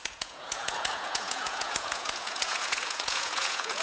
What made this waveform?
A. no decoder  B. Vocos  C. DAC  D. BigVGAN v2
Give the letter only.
B